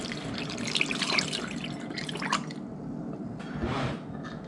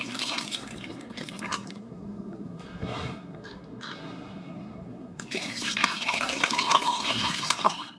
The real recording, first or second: first